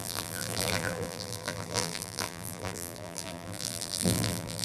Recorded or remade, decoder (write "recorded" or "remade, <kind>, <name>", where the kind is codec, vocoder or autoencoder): remade, vocoder, BigVGAN v2